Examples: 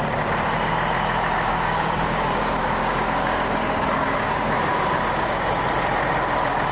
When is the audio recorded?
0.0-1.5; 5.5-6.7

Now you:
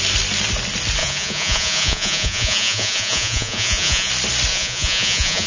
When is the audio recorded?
0.0-1.0; 4.1-4.5

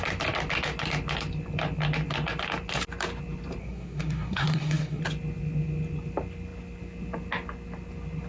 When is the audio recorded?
0.0-3.6; 5.0-8.3

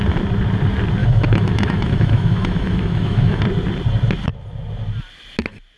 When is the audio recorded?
0.0-1.0; 3.4-5.8

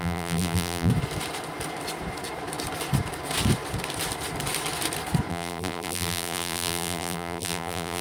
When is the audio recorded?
0.9-5.3

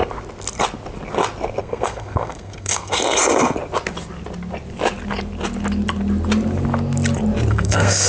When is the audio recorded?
0.0-1.6; 2.9-7.5